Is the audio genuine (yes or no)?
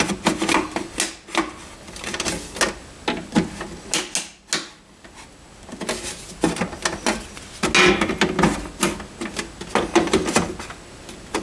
yes